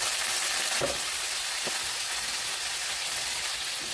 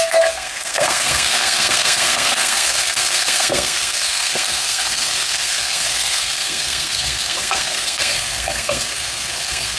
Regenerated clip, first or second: second